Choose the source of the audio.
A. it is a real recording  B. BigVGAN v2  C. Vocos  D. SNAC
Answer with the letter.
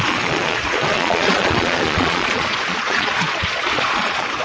C